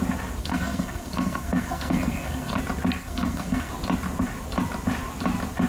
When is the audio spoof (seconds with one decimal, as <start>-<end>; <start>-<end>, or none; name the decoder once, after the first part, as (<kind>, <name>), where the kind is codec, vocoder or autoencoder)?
0.4-2.6 (codec, SNAC); 3.0-3.7